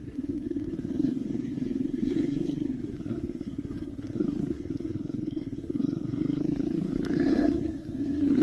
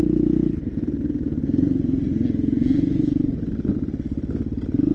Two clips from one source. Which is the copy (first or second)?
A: first